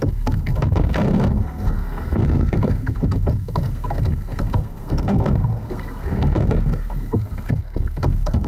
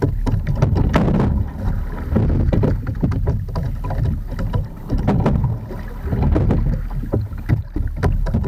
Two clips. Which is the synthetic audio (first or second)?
first